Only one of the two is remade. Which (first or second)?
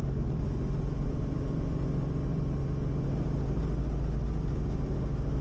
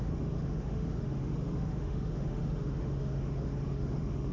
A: second